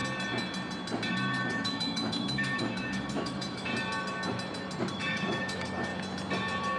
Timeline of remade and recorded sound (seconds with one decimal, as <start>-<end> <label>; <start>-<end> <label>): 0.0-1.1 recorded; 1.1-3.7 remade; 3.7-4.9 recorded; 4.9-5.9 remade; 5.9-6.8 recorded